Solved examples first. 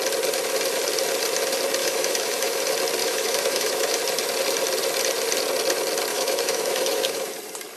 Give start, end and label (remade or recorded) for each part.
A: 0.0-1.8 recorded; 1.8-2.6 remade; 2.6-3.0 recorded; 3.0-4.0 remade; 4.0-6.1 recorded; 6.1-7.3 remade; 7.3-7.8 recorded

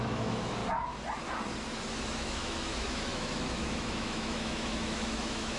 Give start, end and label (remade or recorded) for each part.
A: 0.0-0.6 remade; 0.6-1.9 recorded; 1.9-5.6 remade

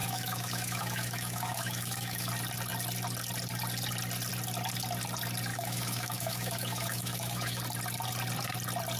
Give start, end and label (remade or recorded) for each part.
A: 0.0-2.3 remade; 2.3-5.5 recorded; 5.5-7.6 remade; 7.6-9.0 recorded

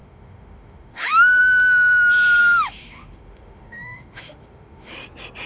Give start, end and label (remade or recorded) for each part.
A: 0.0-1.4 remade; 1.4-2.4 recorded; 2.4-4.9 remade; 4.9-5.5 recorded

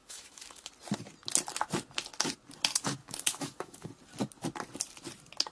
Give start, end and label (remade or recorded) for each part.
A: 0.0-0.7 remade; 0.7-3.0 recorded; 3.0-3.9 remade; 3.9-5.5 recorded

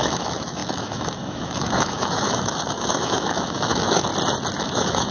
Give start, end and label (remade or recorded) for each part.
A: 0.0-4.1 remade; 4.1-4.6 recorded; 4.6-5.1 remade

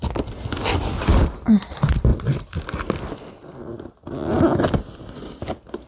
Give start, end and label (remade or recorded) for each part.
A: 0.0-5.9 recorded